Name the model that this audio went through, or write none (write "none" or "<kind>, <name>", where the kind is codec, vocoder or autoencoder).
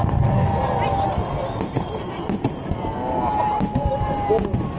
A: none